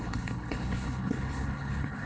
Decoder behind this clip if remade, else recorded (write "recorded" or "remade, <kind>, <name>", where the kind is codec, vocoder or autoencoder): remade, codec, HILCodec